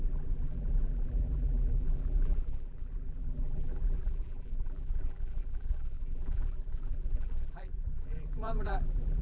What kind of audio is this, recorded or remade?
remade